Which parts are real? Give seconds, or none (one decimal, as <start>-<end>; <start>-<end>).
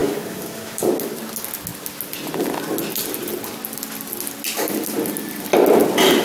0.9-6.2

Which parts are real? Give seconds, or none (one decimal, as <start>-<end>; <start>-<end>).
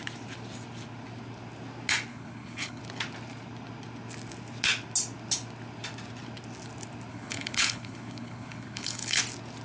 0.0-2.1; 2.8-7.1; 9.2-9.6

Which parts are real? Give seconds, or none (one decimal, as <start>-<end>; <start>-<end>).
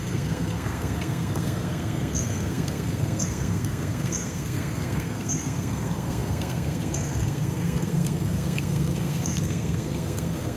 none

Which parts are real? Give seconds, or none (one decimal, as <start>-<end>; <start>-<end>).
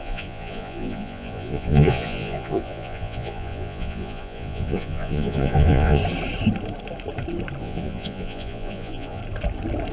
6.0-7.6; 9.2-9.9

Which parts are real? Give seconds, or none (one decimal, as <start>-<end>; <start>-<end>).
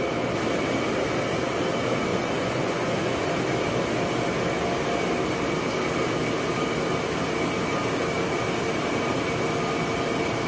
0.0-2.1; 3.3-10.5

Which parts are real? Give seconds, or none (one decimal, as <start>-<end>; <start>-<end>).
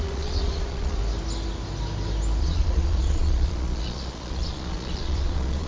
1.0-2.4